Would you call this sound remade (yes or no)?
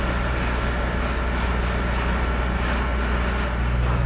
no